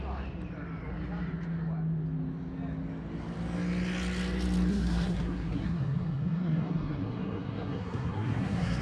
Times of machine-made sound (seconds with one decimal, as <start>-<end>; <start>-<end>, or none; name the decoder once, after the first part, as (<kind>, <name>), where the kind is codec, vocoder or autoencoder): 4.7-8.8 (codec, SNAC)